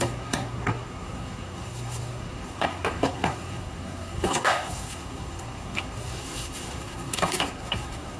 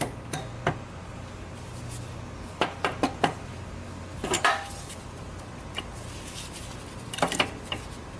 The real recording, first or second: second